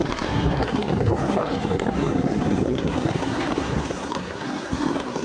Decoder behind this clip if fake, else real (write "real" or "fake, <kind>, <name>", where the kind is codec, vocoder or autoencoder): fake, codec, SNAC